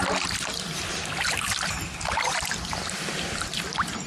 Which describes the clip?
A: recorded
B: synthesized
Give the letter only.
A